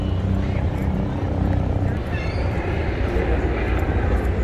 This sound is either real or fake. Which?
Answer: fake